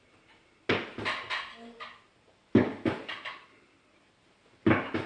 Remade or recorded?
recorded